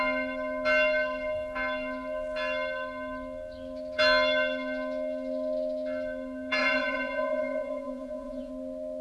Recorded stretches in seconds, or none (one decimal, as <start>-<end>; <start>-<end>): 0.0-6.6; 8.5-9.0